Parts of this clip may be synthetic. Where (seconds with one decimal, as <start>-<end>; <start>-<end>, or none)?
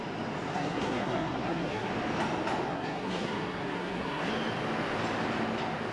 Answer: 0.5-1.9; 2.7-4.3